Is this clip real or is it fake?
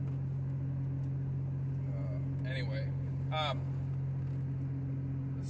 real